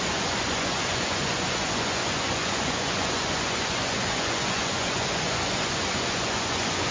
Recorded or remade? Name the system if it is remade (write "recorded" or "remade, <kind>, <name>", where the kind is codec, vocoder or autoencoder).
remade, vocoder, Vocos